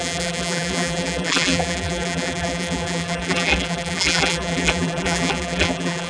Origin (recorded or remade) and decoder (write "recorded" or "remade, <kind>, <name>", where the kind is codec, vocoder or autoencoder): remade, vocoder, BigVGAN v2